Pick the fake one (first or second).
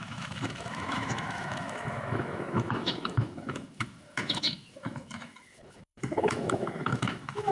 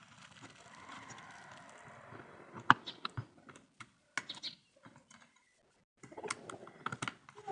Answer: first